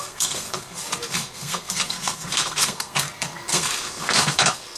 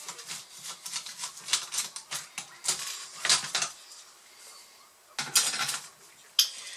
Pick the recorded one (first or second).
second